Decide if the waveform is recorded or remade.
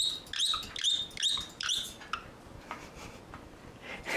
recorded